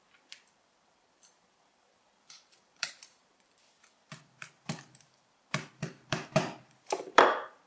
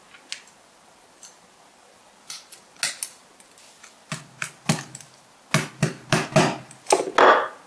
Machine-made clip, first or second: first